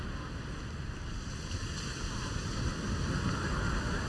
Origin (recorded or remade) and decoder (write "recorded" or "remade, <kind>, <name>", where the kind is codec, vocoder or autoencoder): recorded